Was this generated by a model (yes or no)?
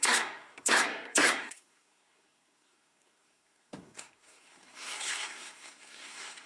yes